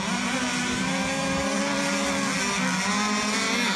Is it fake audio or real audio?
real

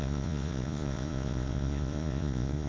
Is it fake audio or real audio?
fake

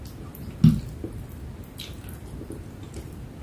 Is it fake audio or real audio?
real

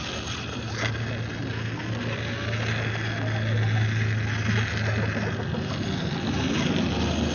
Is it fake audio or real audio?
real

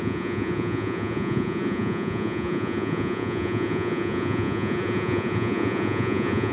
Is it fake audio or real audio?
fake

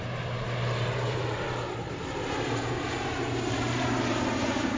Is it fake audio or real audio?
fake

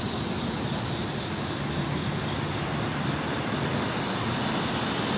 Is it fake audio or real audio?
real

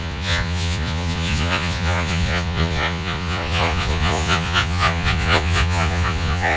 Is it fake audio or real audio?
fake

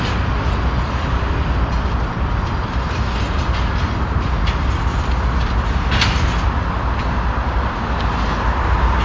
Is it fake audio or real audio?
real